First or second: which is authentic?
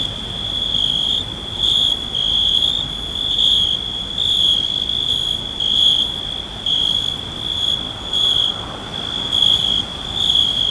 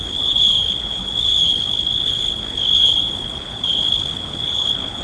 first